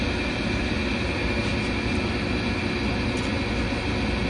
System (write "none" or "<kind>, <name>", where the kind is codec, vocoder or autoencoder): none